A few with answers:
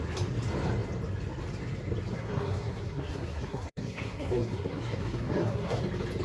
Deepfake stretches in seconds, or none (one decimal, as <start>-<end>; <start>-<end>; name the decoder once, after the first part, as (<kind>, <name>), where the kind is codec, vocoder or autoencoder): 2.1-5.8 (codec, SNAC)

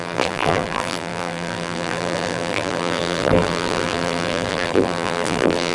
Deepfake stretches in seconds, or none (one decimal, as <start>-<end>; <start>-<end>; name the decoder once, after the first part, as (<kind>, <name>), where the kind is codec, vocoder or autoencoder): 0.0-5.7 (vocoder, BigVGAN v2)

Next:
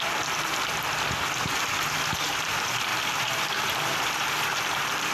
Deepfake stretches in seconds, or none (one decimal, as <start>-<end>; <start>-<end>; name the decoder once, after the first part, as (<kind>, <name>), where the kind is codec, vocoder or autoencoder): 2.9-4.1 (vocoder, BigVGAN v2)

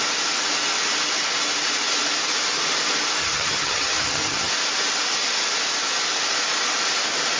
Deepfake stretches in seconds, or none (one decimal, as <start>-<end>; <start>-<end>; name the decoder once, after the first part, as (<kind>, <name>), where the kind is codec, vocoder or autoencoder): 3.2-4.5 (vocoder, HiFi-GAN)

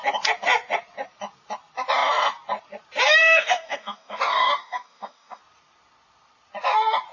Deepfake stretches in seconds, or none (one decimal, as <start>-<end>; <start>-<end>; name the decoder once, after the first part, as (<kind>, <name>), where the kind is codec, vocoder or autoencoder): 3.2-5.4 (codec, DAC)

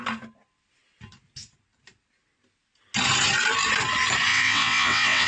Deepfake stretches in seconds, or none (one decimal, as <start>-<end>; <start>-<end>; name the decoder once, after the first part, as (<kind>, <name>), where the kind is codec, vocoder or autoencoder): 4.3-5.3 (vocoder, WaveNeXt)

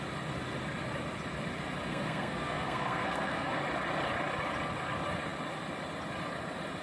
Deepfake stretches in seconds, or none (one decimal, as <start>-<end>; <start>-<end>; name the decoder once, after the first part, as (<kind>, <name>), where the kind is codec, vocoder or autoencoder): 1.9-3.6 (codec, SNAC)